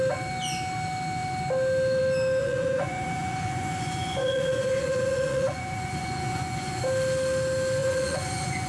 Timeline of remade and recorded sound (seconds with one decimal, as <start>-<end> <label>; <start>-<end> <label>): 0.0-2.4 recorded; 2.4-6.8 remade; 6.8-7.8 recorded; 7.8-8.7 remade